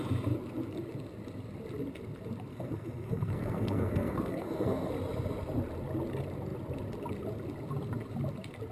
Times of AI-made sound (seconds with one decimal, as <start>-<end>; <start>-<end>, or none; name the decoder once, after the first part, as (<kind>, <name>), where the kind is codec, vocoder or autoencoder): 2.5-4.9 (codec, SNAC)